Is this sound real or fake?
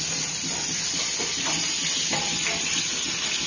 real